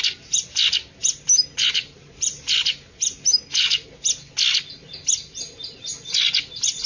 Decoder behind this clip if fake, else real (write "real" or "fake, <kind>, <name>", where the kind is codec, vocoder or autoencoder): real